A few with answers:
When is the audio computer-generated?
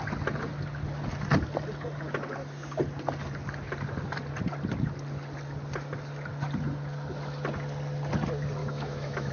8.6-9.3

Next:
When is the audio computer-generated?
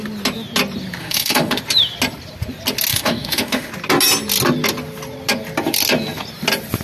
1.0-1.6; 2.9-3.7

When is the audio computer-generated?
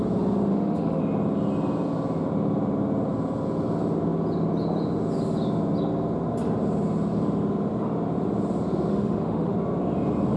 0.5-1.0; 8.9-9.5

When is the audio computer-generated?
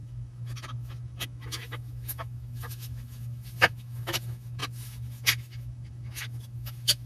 0.0-7.1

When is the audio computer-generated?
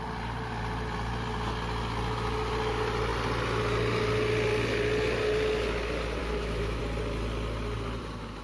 6.2-6.8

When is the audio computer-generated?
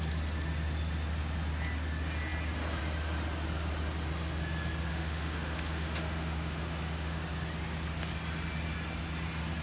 4.9-7.2